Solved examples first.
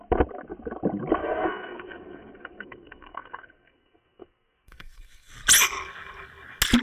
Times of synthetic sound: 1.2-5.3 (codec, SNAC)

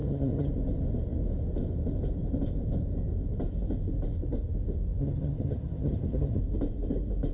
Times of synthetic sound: 0.0-0.5 (vocoder, HiFi-GAN); 5.0-6.4

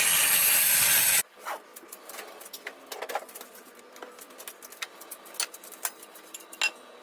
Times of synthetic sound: none

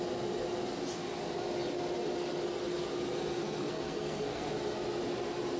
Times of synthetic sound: 3.4-4.5 (codec, SNAC)

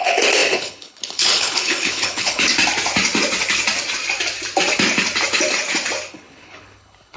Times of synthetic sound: 0.0-2.5 (codec, HILCodec); 6.1-7.2

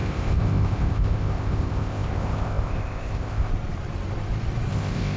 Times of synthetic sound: 0.0-3.5 (codec, ZipCodec); 4.7-5.2

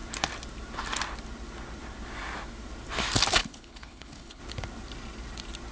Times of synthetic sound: 3.4-4.4 (codec, HILCodec)